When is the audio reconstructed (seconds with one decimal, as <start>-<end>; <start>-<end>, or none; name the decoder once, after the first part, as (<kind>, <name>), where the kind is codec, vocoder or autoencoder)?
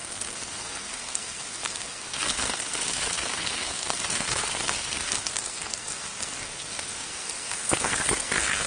0.0-8.7 (codec, SNAC)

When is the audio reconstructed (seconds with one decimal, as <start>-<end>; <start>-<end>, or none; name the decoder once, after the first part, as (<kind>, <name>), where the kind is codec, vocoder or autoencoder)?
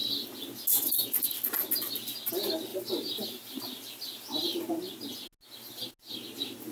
2.7-3.6 (vocoder, BigVGAN v2)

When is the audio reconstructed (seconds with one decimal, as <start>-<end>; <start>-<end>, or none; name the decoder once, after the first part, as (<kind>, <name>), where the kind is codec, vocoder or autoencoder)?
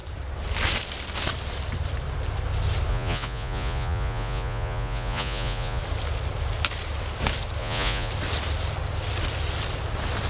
2.9-5.8 (vocoder, Vocos); 7.6-8.1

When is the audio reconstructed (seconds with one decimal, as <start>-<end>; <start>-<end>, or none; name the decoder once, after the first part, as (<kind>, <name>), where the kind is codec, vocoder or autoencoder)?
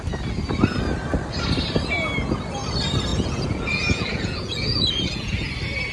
3.1-5.5 (vocoder, Vocos)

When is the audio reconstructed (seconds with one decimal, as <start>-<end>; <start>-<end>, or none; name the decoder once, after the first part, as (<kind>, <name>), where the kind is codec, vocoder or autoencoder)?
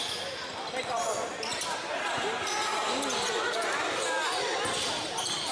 none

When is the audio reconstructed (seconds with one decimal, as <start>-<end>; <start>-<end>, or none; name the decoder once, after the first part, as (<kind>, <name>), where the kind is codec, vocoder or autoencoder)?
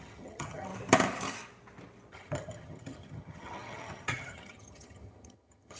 0.0-0.7 (vocoder, HiFi-GAN); 2.1-5.8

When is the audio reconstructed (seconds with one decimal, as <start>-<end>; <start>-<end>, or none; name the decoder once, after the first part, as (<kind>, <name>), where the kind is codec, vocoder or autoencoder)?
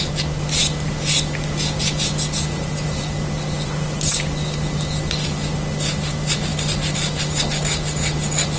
none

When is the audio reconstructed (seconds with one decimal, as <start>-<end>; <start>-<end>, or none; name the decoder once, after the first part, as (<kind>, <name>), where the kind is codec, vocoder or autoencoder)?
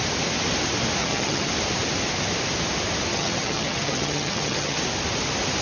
1.0-1.5 (vocoder, HiFi-GAN); 3.1-4.8